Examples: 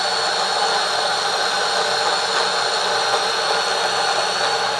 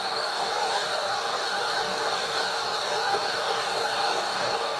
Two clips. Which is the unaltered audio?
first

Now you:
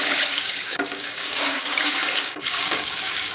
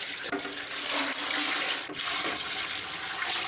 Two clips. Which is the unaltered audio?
second